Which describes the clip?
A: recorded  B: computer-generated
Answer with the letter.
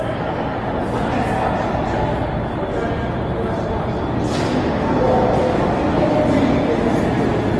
A